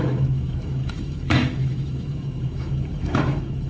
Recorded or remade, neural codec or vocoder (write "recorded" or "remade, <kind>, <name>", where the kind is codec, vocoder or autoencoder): remade, autoencoder, DAC-VAE